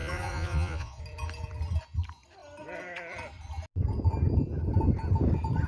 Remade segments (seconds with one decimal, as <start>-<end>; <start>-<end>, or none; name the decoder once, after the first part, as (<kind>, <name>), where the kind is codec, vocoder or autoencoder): 0.0-1.0 (vocoder, Vocos)